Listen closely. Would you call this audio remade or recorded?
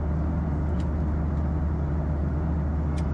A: recorded